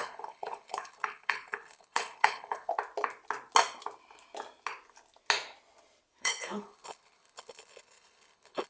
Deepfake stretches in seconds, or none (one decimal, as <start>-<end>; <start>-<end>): 0.0-2.7; 6.2-8.7

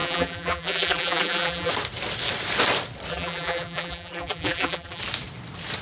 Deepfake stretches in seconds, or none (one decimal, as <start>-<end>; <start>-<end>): 0.0-1.7; 3.1-5.0

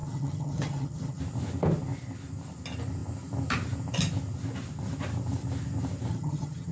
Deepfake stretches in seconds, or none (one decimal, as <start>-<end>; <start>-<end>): 0.0-1.2; 6.1-6.7

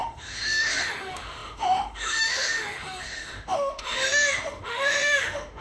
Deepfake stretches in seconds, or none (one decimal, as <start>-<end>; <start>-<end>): 0.0-5.6

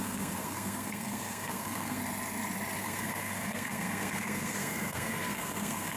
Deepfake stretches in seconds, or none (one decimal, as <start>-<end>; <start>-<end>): 0.0-2.0; 2.8-6.0

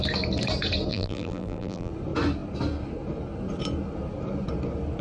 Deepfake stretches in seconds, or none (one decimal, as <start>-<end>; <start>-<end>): 0.9-1.9